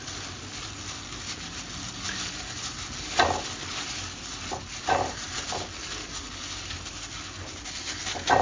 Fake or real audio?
real